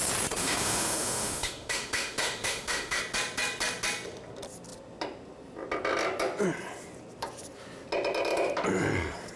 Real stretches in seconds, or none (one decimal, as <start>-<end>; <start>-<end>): 0.0-0.4; 3.0-9.4